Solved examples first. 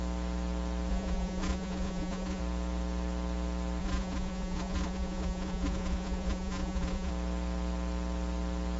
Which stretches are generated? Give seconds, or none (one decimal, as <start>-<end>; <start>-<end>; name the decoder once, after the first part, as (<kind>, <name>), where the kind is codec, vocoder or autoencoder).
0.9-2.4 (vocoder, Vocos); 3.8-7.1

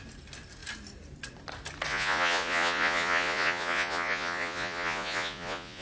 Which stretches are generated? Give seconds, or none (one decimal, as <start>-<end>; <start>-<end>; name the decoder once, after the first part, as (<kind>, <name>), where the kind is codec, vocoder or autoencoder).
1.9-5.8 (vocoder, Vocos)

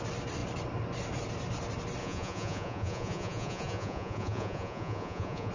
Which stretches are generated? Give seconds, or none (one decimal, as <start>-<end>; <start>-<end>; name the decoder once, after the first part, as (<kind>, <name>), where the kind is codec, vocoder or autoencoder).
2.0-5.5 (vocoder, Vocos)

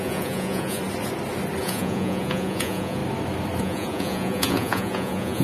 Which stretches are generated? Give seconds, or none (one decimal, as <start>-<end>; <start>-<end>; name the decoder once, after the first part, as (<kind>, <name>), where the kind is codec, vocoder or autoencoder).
0.0-0.8 (vocoder, Vocos); 1.6-3.0; 3.6-5.4

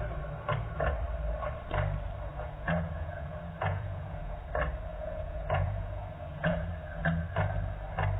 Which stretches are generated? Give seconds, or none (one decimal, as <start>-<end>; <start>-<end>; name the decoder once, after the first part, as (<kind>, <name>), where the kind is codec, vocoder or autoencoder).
2.3-4.5 (vocoder, Vocos); 4.9-6.7